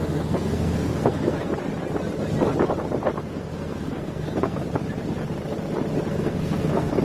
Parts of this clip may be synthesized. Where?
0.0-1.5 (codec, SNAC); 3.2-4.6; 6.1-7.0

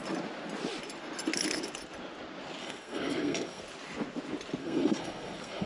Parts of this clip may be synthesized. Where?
2.6-3.6 (codec, SNAC); 4.6-5.7